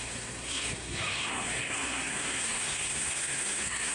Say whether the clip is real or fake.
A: fake